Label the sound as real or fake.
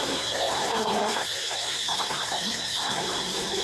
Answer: fake